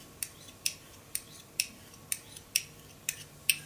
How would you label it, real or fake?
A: real